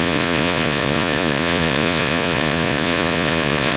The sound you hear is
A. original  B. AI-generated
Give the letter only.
B